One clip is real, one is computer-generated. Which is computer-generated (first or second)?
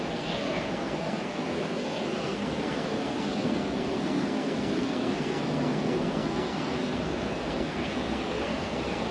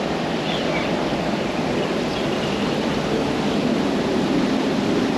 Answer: first